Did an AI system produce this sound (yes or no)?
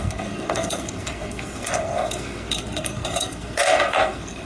yes